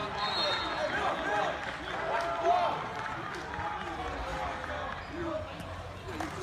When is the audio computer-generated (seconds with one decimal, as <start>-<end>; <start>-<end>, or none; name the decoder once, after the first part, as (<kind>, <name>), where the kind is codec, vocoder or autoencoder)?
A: none